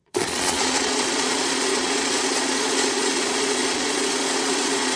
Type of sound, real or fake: fake